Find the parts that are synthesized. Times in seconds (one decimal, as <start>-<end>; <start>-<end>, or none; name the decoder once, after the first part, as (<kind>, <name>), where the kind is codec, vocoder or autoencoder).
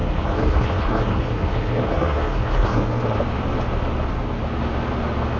0.0-3.2 (codec, SNAC)